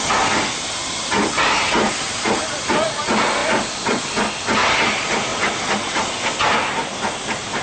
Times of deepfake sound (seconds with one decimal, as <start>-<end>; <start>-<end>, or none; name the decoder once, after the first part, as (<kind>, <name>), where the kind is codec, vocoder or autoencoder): none